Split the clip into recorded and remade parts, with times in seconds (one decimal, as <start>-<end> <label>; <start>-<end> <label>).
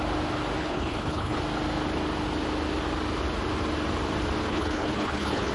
0.0-0.6 recorded; 0.6-1.4 remade; 1.4-4.5 recorded; 4.5-5.5 remade